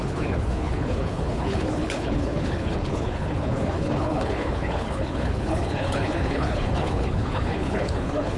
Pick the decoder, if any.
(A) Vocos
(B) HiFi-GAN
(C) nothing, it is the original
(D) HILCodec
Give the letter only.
D